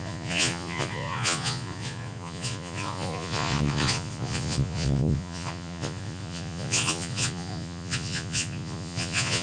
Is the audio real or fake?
fake